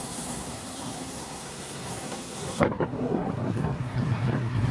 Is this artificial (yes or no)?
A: yes